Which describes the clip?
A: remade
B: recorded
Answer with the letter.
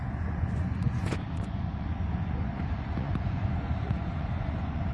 A